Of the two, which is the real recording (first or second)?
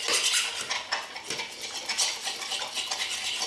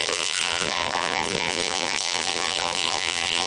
first